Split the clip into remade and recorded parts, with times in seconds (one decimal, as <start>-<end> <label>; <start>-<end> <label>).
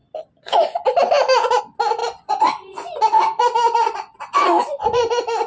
0.0-2.0 recorded; 2.0-5.5 remade